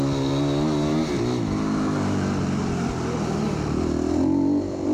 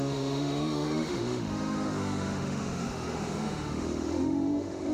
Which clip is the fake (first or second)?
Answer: second